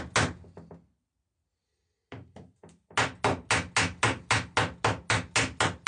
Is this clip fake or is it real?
real